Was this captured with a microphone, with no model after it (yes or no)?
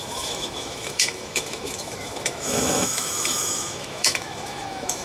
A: no